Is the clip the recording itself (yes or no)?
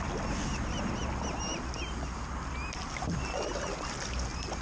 yes